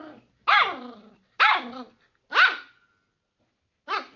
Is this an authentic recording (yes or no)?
yes